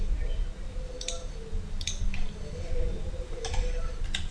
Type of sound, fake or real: real